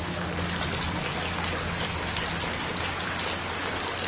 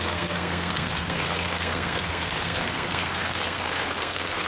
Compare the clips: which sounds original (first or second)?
first